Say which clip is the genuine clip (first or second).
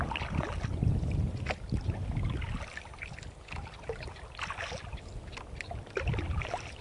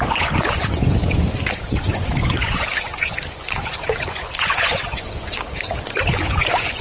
first